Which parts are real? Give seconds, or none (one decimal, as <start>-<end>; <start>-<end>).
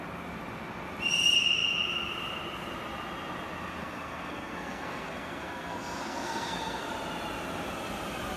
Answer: 0.0-3.8; 6.9-8.4